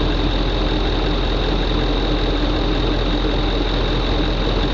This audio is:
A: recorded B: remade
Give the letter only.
A